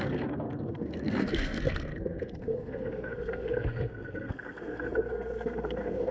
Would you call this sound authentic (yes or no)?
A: no